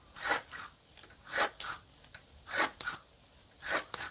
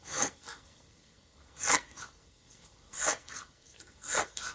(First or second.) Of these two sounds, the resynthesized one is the second